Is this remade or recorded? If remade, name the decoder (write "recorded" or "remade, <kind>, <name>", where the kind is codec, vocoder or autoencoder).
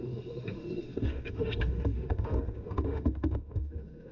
remade, autoencoder, DAC-VAE